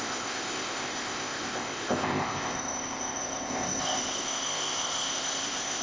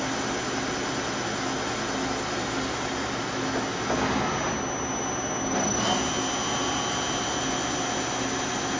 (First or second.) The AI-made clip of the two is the first